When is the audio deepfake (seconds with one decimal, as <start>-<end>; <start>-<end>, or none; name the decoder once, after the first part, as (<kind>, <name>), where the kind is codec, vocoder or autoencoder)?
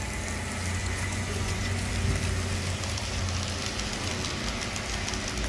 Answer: 0.8-1.9 (vocoder, Vocos)